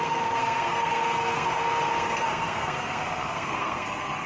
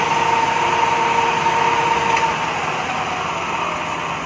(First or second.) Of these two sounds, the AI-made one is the first